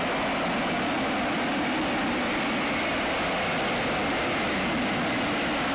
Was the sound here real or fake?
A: real